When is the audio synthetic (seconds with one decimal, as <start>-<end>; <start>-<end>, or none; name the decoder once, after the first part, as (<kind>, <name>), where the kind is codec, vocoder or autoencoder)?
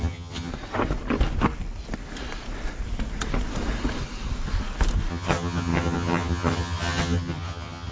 0.0-0.5 (vocoder, HiFi-GAN); 5.1-7.9